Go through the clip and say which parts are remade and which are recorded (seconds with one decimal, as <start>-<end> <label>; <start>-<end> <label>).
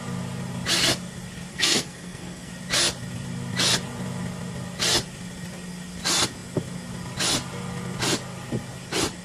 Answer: 0.0-1.5 recorded; 1.5-2.5 remade; 2.5-9.2 recorded